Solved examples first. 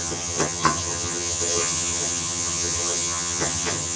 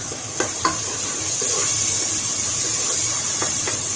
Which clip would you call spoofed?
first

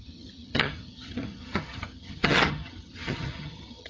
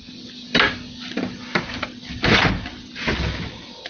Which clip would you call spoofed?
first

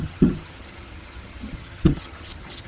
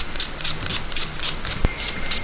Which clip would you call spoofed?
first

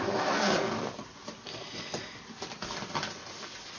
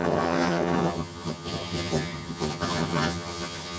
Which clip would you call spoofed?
second